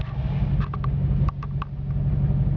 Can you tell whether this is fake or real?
real